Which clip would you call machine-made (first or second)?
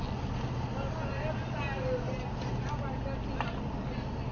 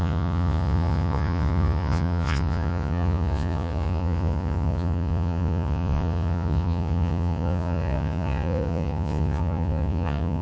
second